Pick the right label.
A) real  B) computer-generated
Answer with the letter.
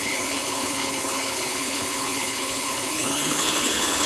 B